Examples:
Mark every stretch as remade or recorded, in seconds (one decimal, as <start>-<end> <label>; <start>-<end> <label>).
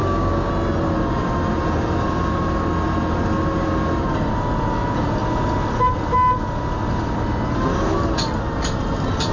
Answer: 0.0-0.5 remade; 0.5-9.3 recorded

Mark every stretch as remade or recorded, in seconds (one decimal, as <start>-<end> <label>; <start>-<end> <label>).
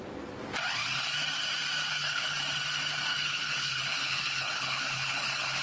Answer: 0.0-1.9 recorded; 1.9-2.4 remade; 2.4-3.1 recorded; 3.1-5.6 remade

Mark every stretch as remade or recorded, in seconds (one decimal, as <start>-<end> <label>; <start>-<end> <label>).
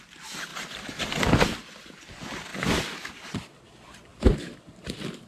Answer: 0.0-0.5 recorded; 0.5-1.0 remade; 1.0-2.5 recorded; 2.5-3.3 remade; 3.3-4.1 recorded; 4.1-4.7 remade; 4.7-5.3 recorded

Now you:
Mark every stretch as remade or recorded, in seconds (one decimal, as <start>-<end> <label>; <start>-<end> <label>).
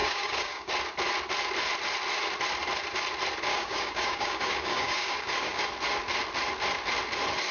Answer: 0.0-0.7 remade; 0.7-3.5 recorded; 3.5-5.6 remade; 5.6-7.5 recorded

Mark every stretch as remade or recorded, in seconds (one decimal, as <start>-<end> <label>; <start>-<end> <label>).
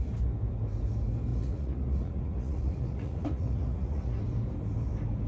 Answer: 0.0-1.3 recorded; 1.3-4.2 remade; 4.2-5.3 recorded